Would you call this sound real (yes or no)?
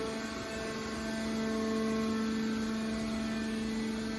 yes